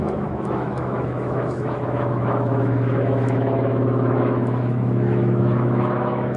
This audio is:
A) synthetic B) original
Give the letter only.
A